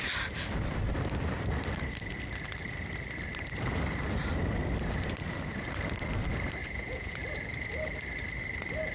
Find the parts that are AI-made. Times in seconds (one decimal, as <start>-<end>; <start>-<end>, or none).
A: 6.6-7.2